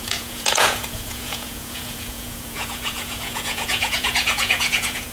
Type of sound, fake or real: fake